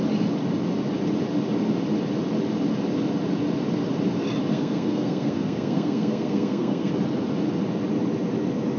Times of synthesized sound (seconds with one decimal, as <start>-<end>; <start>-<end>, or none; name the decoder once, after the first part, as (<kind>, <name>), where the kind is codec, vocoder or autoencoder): 4.5-6.9 (codec, SNAC)